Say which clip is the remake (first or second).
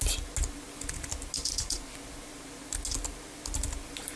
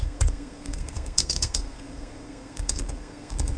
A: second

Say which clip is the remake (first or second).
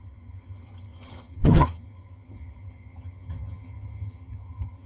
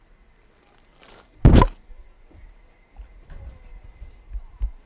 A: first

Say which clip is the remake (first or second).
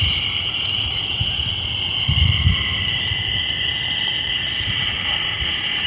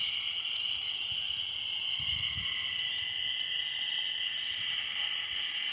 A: first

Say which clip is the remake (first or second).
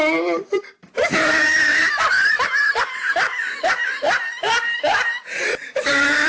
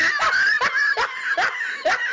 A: first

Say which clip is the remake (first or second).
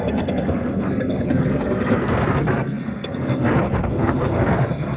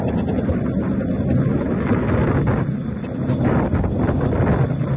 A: first